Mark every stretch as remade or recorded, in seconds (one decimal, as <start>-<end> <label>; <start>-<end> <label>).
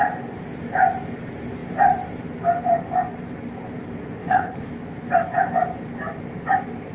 0.0-4.2 recorded; 4.2-4.7 remade; 4.7-6.9 recorded